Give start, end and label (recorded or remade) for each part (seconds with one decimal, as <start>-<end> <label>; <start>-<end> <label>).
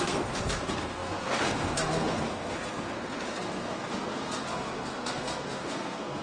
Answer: 0.0-6.2 remade